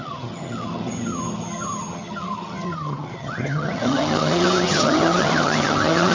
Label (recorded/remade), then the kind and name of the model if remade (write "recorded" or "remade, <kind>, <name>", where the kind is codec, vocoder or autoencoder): remade, vocoder, HiFi-GAN